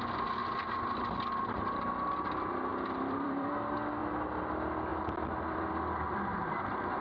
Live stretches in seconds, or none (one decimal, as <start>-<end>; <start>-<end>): 0.0-0.4; 2.1-2.7; 3.5-4.9; 5.7-7.0